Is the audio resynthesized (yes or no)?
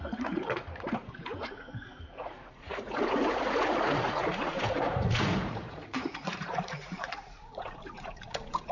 yes